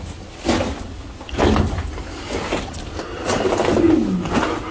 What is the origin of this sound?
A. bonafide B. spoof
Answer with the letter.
A